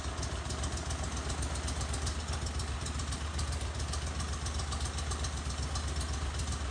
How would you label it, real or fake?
real